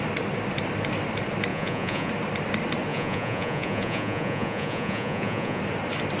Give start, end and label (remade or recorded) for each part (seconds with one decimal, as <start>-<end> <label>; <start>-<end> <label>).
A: 0.0-1.5 recorded; 1.5-2.1 remade; 2.1-2.9 recorded; 2.9-5.6 remade; 5.6-6.2 recorded